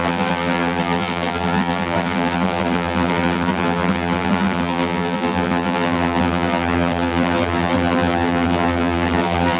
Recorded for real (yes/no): no